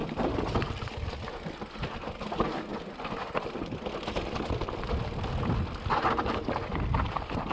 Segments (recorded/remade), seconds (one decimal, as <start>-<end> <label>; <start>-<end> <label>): 0.0-2.2 recorded; 2.2-2.7 remade; 2.7-7.0 recorded; 7.0-7.5 remade